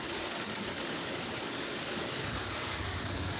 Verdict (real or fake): fake